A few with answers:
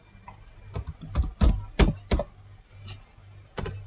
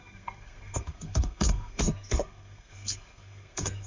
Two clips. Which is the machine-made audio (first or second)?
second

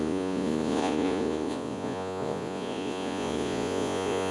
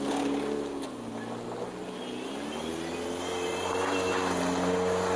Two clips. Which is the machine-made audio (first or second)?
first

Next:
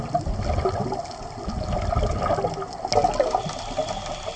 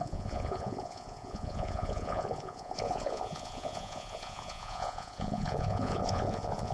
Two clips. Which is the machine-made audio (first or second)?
second